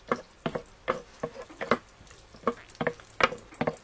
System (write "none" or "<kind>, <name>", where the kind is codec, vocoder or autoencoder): none